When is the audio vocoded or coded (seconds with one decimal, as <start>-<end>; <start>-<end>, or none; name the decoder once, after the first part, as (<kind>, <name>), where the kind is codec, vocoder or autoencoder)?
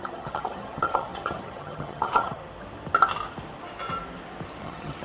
0.0-2.4 (vocoder, HiFi-GAN); 4.6-5.0